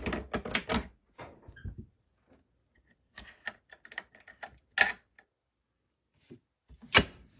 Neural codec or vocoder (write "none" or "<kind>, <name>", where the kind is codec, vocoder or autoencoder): none